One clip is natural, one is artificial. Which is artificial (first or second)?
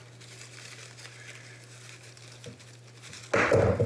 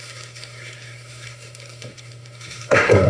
second